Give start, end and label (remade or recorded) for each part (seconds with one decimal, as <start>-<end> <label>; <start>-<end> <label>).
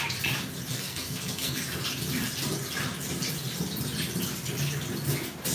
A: 0.0-0.7 recorded; 0.7-1.8 remade; 1.8-5.5 recorded